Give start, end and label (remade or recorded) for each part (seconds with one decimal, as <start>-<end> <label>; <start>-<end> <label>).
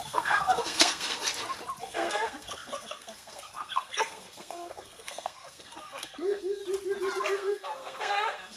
0.0-1.3 remade; 1.3-1.8 recorded; 1.8-6.6 remade; 6.6-7.2 recorded; 7.2-8.6 remade